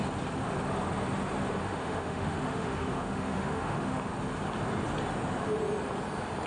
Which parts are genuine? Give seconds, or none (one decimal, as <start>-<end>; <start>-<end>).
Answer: 0.0-1.6; 4.1-6.5